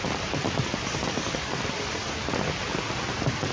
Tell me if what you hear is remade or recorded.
recorded